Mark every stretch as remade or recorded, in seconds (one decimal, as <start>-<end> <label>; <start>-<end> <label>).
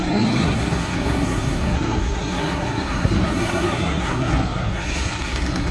0.0-5.7 remade